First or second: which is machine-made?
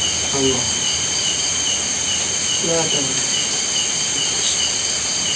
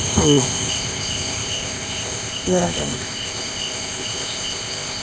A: second